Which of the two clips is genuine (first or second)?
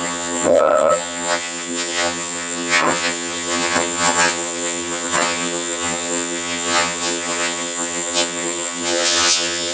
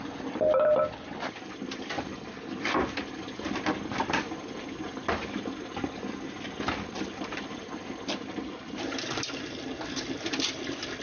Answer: second